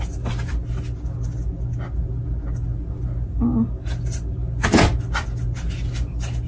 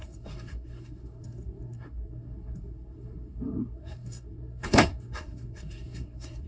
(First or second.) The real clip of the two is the first